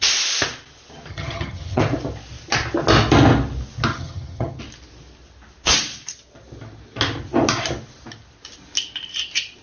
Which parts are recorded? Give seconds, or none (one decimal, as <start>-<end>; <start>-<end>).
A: 0.0-1.1; 1.8-3.9; 4.6-9.6